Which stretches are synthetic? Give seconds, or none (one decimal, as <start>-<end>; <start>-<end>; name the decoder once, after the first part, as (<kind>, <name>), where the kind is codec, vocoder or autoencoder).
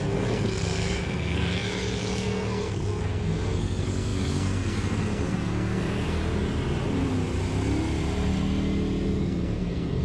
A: 0.0-6.2 (codec, SNAC); 9.2-10.0